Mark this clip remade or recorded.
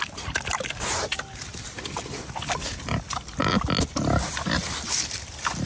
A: recorded